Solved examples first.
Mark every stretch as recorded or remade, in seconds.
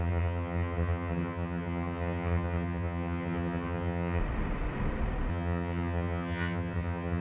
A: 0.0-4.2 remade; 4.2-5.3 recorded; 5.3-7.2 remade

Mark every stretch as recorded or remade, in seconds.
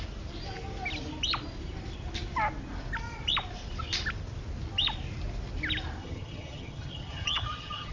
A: 0.0-6.0 recorded; 6.0-7.9 remade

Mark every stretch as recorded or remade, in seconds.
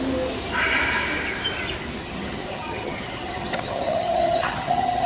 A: 0.0-2.0 recorded; 2.0-5.1 remade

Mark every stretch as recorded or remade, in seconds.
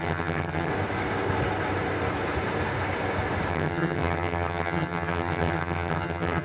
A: 0.0-0.7 remade; 0.7-3.5 recorded; 3.5-6.4 remade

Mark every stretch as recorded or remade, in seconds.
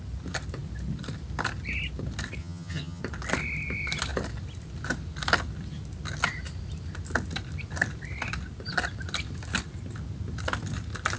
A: 0.0-2.4 recorded; 2.4-3.0 remade; 3.0-11.2 recorded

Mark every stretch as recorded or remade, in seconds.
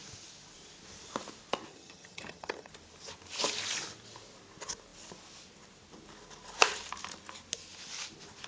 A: 0.0-1.7 recorded; 1.7-2.7 remade; 2.7-8.5 recorded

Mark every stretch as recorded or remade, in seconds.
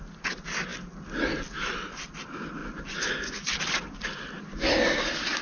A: 0.0-5.4 recorded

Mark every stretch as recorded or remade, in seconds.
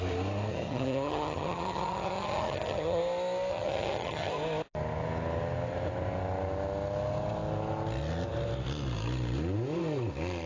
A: 0.0-0.5 recorded; 0.5-3.0 remade; 3.0-3.5 recorded; 3.5-4.3 remade; 4.3-10.5 recorded